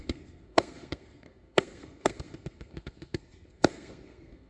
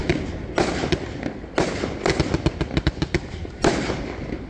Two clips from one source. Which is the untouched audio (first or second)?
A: second